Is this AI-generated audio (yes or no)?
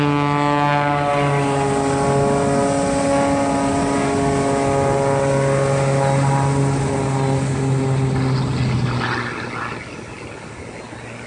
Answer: no